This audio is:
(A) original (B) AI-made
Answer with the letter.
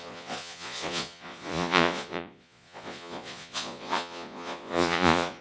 B